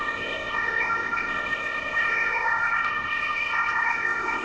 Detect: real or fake fake